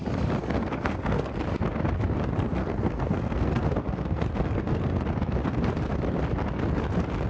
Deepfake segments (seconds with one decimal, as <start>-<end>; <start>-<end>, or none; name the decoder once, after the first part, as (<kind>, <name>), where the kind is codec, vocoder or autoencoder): 0.4-1.3 (codec, SNAC); 2.6-5.0